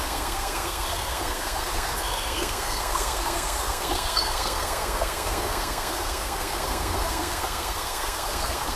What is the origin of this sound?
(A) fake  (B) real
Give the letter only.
A